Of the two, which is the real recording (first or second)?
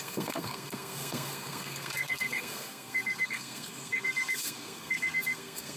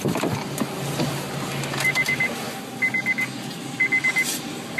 second